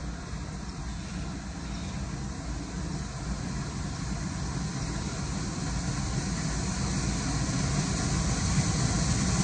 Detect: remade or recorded recorded